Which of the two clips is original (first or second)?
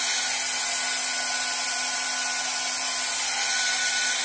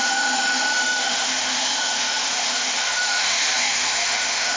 first